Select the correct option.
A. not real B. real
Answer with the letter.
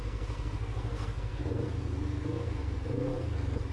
A